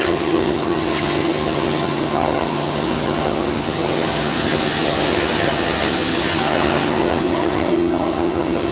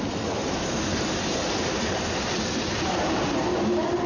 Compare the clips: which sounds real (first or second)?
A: second